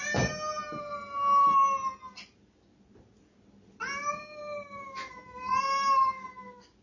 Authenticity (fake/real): real